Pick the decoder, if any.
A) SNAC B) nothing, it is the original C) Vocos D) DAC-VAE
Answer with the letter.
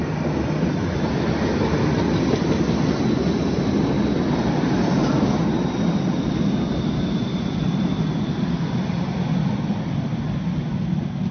B